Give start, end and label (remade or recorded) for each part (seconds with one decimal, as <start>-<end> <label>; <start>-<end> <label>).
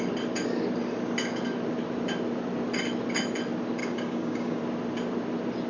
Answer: 0.0-3.8 recorded; 3.8-4.6 remade; 4.6-5.7 recorded